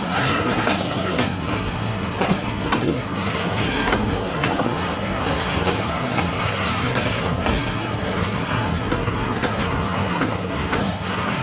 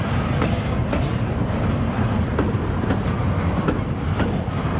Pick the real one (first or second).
second